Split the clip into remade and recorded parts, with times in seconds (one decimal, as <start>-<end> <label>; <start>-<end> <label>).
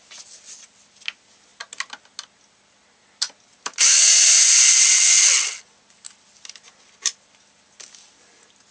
0.0-8.7 recorded